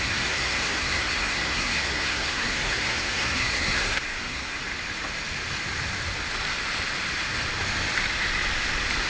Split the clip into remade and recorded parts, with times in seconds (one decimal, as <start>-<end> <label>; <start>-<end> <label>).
0.0-4.6 remade; 4.6-9.1 recorded